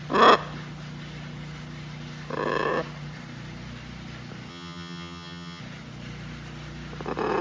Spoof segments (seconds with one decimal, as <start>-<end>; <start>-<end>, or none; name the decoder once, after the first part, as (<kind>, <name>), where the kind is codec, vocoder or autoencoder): 4.5-5.6 (vocoder, HiFi-GAN)